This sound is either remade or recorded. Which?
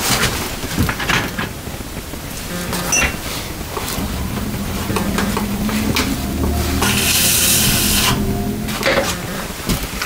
recorded